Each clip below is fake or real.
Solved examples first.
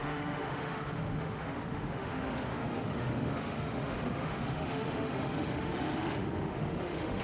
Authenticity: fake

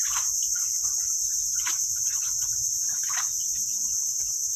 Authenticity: real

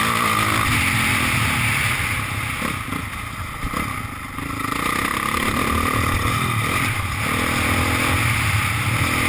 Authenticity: real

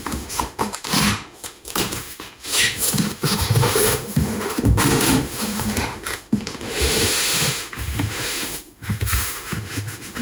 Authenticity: fake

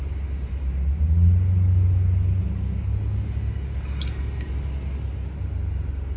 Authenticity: real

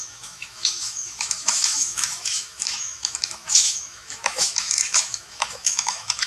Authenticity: fake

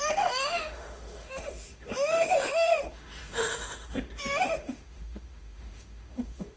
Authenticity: fake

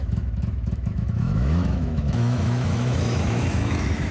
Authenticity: fake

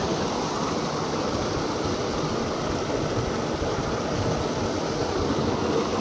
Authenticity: real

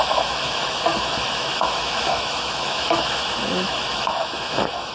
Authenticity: fake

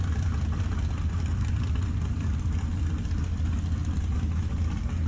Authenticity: real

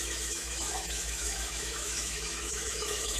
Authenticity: fake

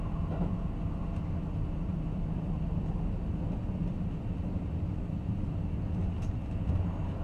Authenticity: real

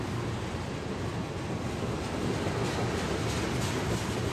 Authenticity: real